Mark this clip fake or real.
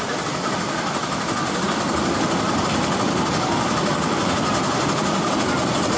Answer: real